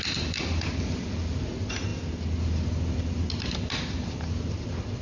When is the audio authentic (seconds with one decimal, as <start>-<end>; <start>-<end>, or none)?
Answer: 0.0-5.0